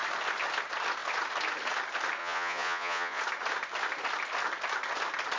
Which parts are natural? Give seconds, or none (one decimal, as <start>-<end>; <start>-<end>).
0.0-2.2; 3.2-5.4